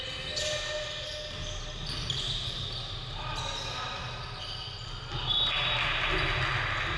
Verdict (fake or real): real